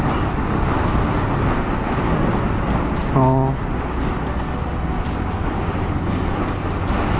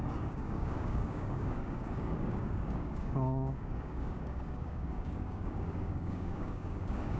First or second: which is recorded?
first